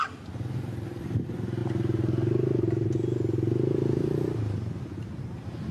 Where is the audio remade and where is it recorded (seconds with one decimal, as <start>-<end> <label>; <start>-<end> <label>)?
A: 0.0-5.7 recorded